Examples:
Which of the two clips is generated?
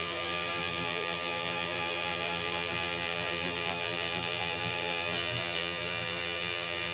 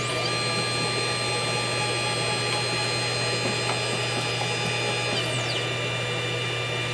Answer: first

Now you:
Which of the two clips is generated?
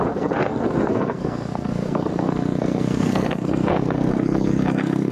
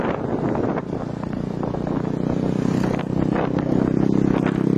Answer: first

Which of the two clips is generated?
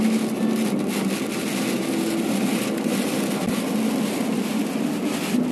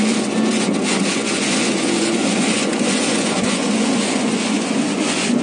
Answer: second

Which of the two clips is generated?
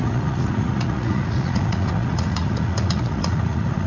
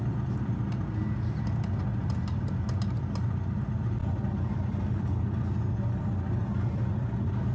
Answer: first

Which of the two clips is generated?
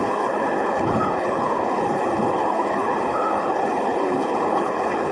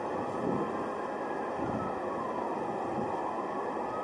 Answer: first